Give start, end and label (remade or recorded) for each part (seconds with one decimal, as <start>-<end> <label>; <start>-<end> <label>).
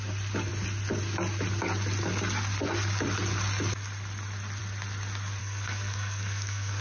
0.0-5.4 recorded; 5.4-6.8 remade